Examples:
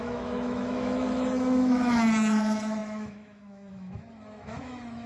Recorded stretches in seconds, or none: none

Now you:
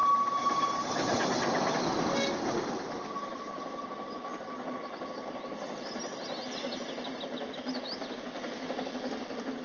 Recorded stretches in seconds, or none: 0.0-9.6